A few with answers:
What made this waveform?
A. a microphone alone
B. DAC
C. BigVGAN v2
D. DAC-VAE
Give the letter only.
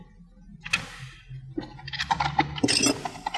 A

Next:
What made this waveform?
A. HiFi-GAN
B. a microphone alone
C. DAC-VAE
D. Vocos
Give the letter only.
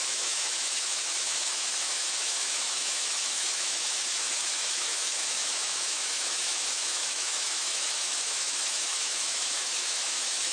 C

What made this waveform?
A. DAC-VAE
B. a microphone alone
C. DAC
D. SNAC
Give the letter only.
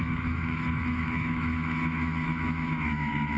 A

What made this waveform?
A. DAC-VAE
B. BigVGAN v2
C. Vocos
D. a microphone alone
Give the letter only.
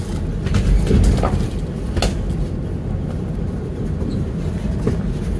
D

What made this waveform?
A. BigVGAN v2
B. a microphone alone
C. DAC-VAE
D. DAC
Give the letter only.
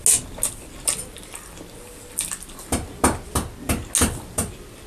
B